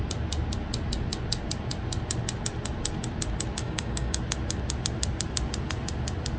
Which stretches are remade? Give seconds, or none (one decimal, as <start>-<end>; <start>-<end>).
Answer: 3.6-4.2